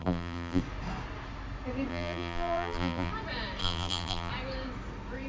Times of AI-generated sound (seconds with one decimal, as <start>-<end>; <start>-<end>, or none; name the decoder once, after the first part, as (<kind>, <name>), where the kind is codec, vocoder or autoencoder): 0.0-0.6 (vocoder, BigVGAN v2); 1.9-3.1; 3.6-4.3